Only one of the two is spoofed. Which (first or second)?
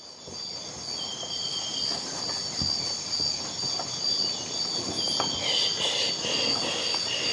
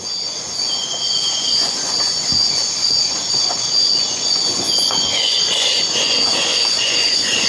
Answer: second